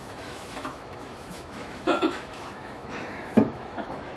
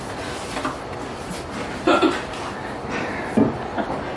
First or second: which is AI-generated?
first